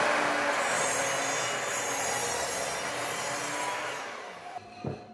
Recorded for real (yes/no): yes